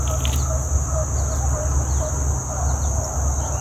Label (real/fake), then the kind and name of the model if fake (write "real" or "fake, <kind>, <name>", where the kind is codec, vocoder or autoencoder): real